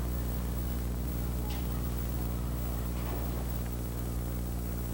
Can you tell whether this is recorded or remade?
recorded